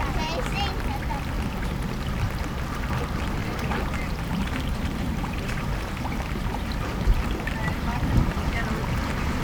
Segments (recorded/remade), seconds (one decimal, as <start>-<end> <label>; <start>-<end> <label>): 0.0-3.4 recorded; 3.4-8.5 remade; 8.5-9.4 recorded